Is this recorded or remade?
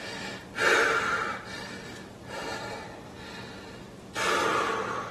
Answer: recorded